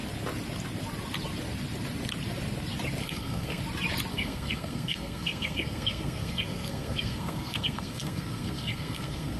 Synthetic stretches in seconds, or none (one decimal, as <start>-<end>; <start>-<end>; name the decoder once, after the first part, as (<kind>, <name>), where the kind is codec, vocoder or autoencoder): 3.0-3.6 (codec, SNAC); 4.1-9.4